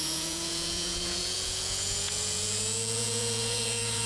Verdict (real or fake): fake